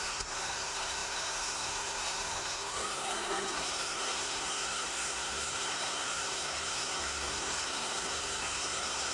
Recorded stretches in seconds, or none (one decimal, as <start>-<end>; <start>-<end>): none